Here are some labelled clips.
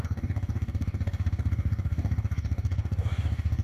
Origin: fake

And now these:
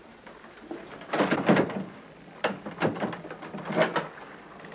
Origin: real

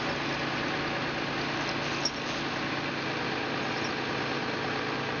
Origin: real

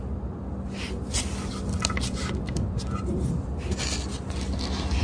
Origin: real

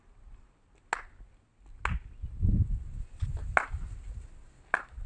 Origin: real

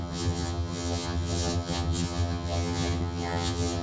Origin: fake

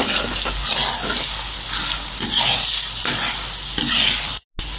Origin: real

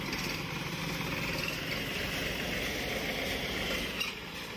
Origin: real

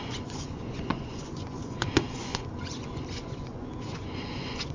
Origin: fake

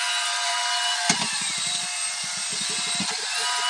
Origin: real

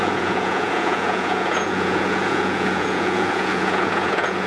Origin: fake